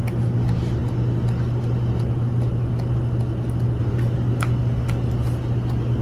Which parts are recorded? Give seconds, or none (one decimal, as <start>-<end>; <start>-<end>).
0.0-6.0